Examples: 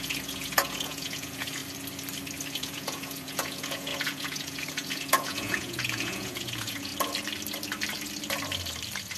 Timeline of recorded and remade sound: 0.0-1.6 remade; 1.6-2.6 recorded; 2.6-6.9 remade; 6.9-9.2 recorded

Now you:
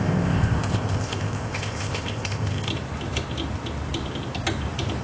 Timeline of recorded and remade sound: 0.0-2.7 remade; 2.7-5.0 recorded

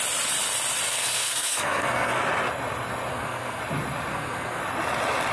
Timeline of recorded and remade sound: 0.0-0.9 recorded; 0.9-2.2 remade; 2.2-3.1 recorded; 3.1-3.6 remade; 3.6-4.1 recorded; 4.1-4.6 remade; 4.6-5.3 recorded

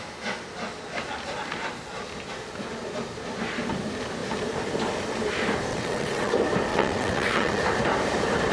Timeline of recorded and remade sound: 0.0-5.7 recorded; 5.7-6.3 remade; 6.3-6.7 recorded; 6.7-7.6 remade; 7.6-8.5 recorded

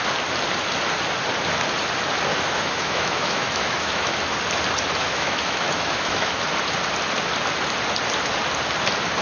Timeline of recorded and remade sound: 0.0-2.3 recorded; 2.3-4.2 remade; 4.2-5.0 recorded; 5.0-6.3 remade; 6.3-9.2 recorded